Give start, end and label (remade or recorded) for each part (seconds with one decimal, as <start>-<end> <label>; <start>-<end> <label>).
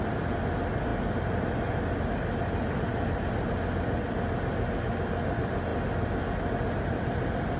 0.0-7.6 recorded